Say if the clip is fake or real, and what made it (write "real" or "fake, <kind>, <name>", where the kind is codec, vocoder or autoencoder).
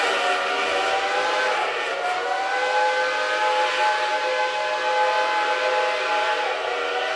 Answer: real